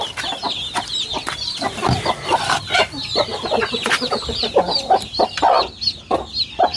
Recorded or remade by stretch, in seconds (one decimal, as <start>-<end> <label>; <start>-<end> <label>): 0.0-6.8 recorded